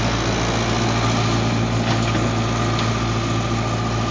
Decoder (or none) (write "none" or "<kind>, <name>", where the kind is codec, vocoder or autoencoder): none